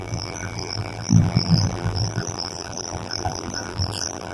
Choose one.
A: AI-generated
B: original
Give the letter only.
A